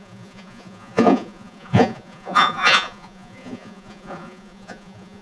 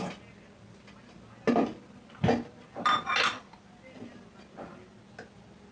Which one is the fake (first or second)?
first